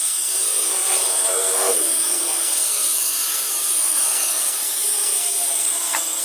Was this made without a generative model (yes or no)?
no